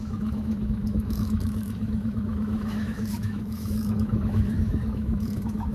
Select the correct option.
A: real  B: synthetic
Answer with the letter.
B